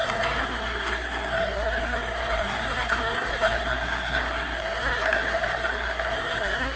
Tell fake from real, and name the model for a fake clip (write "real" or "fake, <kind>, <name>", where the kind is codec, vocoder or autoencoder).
fake, codec, SNAC